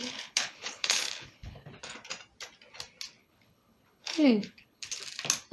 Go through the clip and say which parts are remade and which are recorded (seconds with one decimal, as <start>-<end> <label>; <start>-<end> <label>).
0.0-1.7 remade; 1.7-3.2 recorded; 3.2-5.0 remade; 5.0-5.5 recorded

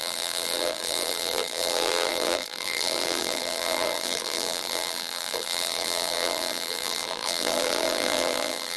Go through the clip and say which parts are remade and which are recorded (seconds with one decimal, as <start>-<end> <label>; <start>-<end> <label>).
0.0-8.8 remade